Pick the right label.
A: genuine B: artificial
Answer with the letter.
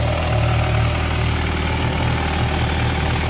A